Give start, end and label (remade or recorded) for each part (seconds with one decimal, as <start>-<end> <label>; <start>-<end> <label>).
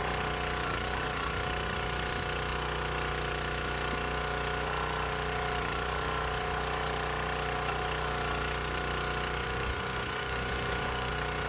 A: 0.0-9.4 recorded; 9.4-11.1 remade; 11.1-11.5 recorded